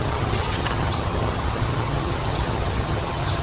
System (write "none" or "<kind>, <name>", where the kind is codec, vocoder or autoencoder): vocoder, HiFi-GAN